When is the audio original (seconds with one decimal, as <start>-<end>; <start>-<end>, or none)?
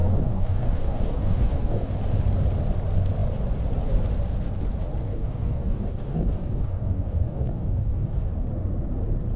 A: 1.9-5.1; 8.3-9.4